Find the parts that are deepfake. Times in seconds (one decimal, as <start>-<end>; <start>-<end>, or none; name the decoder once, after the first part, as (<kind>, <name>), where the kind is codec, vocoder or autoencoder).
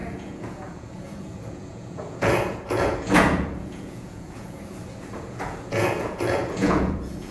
0.0-7.3 (vocoder, Vocos)